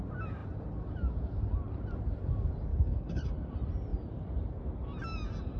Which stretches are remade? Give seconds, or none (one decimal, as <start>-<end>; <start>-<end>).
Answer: 2.7-3.3